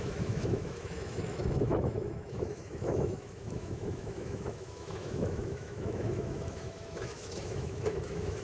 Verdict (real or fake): fake